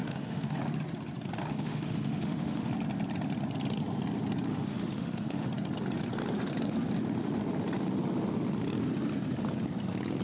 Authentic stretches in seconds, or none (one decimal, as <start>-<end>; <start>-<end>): 0.6-1.5; 2.7-4.5; 5.5-10.2